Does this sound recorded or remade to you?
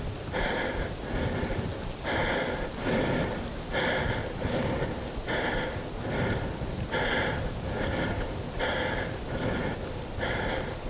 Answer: recorded